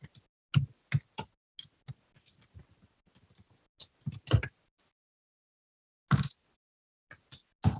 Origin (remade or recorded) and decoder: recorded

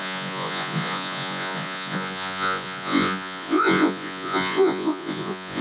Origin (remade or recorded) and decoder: remade, vocoder, Vocos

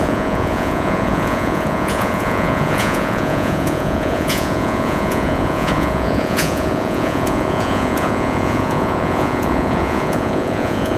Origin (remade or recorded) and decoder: remade, vocoder, Vocos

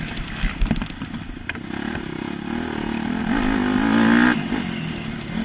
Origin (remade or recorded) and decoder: recorded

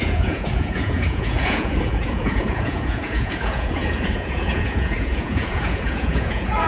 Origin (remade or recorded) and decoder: remade, vocoder, Vocos